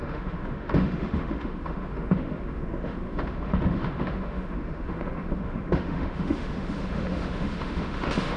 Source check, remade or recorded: remade